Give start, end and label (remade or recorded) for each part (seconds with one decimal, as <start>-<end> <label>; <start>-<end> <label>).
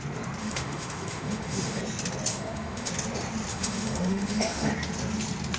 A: 0.0-0.4 recorded; 0.4-1.8 remade; 1.8-2.3 recorded; 2.3-2.9 remade; 2.9-3.5 recorded; 3.5-4.7 remade; 4.7-5.6 recorded